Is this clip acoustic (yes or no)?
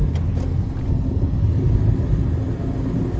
yes